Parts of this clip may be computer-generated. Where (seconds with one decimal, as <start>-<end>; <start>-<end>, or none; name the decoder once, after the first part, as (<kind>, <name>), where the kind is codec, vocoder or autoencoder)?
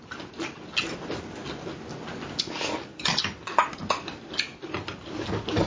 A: none